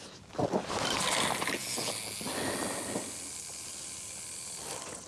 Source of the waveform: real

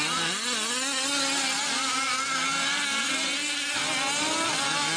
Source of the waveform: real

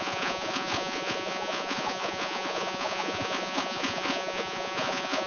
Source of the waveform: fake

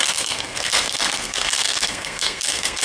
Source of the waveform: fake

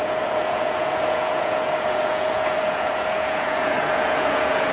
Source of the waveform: fake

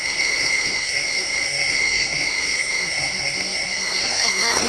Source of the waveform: fake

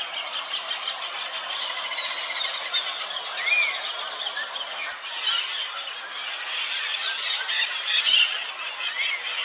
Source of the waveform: real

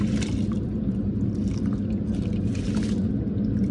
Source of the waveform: real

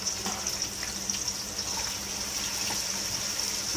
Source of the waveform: real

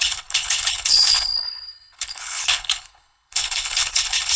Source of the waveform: fake